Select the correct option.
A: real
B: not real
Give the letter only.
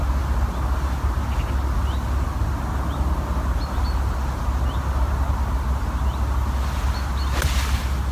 A